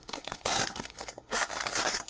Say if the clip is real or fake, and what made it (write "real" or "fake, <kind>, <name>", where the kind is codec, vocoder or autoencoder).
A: fake, codec, SNAC